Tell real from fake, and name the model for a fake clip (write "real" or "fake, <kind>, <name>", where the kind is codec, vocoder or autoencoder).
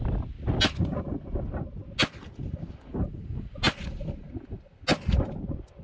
real